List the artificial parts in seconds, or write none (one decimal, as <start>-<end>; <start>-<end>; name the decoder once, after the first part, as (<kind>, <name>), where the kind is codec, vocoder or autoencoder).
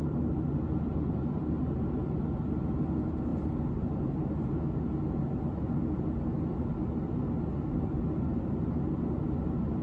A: none